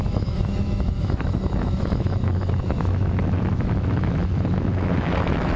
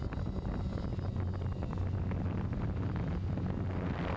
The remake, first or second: first